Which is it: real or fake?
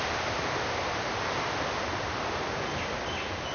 real